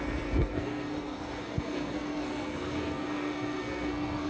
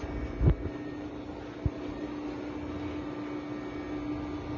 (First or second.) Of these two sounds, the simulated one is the first